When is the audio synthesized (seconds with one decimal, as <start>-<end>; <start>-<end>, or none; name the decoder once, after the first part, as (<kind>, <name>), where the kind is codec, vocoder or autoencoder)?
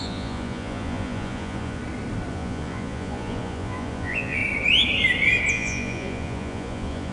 0.0-1.8 (vocoder, Vocos); 2.3-4.4; 5.5-7.1